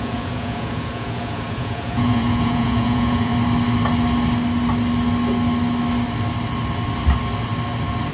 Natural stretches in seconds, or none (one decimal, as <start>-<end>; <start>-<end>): 3.3-8.1